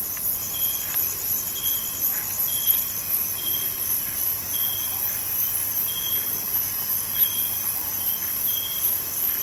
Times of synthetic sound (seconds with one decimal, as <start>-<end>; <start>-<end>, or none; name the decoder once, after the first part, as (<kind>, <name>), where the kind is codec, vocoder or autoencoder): none